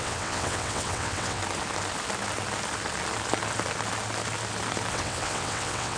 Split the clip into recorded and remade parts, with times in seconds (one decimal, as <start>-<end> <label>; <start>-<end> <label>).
0.0-1.4 remade; 1.4-4.9 recorded; 4.9-6.0 remade